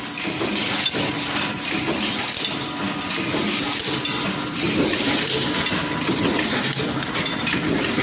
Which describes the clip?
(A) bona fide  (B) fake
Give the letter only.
A